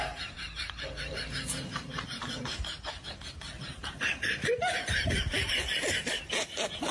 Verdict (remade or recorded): remade